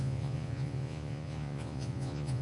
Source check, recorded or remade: remade